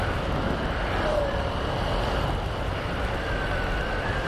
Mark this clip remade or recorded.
recorded